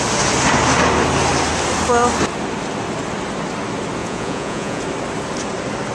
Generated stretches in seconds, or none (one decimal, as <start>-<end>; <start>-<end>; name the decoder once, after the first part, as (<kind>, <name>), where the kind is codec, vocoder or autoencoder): 4.0-4.8 (vocoder, Vocos)